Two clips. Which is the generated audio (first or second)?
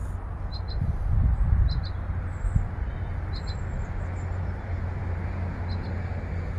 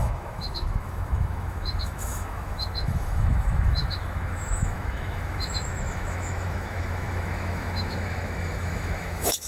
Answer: second